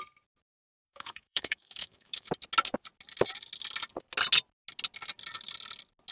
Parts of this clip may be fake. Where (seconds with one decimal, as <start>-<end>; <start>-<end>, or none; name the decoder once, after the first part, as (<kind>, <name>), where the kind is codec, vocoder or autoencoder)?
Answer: 0.6-2.3 (autoencoder, DAC-VAE)